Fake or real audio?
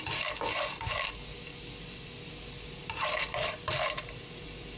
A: real